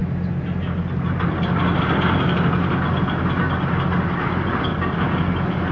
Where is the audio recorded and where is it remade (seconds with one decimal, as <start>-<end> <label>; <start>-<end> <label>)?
0.0-5.7 recorded